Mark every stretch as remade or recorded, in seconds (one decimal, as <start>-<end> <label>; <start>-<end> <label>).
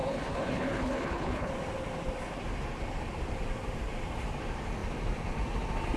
0.0-1.5 remade; 1.5-6.0 recorded